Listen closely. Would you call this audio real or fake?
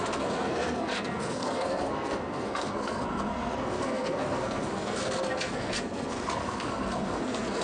fake